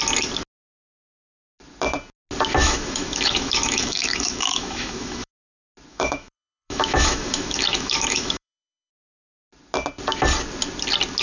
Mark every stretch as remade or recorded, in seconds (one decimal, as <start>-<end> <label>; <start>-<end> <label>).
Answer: 0.0-2.6 recorded; 2.6-5.3 remade; 5.3-5.9 recorded; 5.9-8.9 remade; 8.9-11.2 recorded